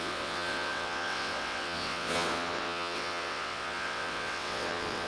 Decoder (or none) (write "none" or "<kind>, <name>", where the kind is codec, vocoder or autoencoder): vocoder, WaveNeXt